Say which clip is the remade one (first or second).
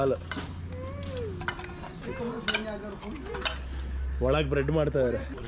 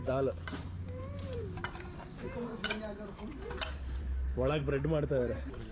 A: second